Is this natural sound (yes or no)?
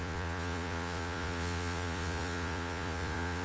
no